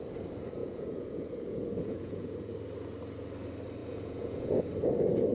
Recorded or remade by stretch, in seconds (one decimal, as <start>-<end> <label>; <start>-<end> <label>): 0.0-0.6 recorded; 0.6-2.5 remade; 2.5-3.8 recorded; 3.8-4.6 remade; 4.6-5.3 recorded